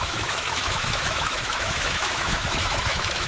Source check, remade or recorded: remade